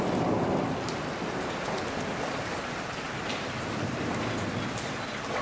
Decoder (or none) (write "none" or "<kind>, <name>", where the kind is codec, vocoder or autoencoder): none